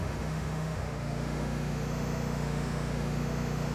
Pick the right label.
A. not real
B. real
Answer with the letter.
A